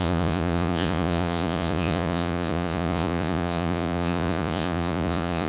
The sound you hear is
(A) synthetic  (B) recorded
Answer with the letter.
A